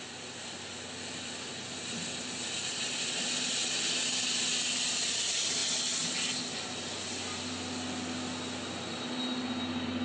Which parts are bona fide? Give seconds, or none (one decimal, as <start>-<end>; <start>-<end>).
0.0-10.0